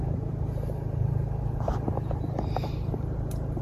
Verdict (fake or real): fake